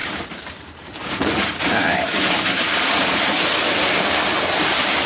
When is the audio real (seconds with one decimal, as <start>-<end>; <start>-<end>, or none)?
none

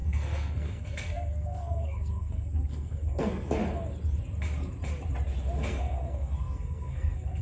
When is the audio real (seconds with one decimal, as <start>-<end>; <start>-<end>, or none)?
3.6-5.6

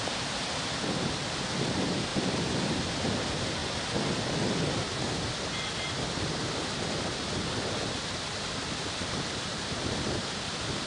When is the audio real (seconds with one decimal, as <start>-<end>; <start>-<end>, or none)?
3.6-8.7

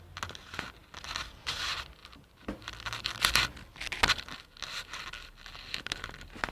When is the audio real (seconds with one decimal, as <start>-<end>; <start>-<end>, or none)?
0.0-6.5